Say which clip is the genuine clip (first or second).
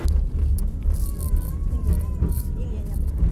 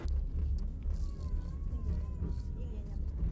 second